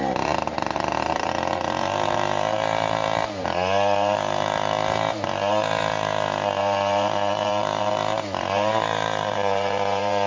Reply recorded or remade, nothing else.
remade